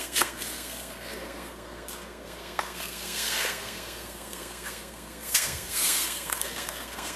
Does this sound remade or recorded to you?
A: remade